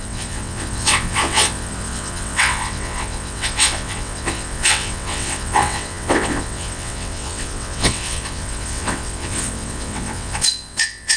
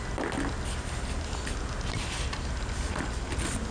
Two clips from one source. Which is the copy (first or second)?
first